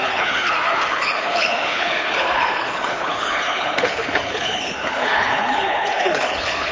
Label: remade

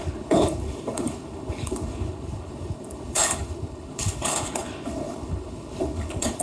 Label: remade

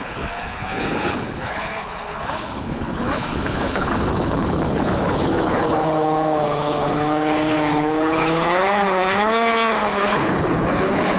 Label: remade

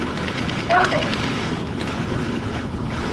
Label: remade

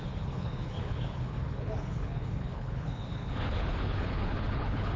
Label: remade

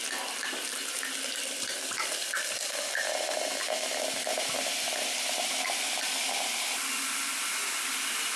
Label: recorded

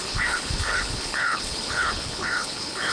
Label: remade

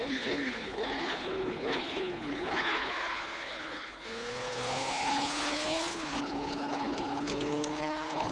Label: remade